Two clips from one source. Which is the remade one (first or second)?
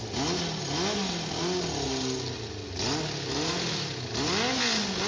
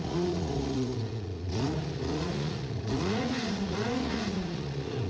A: second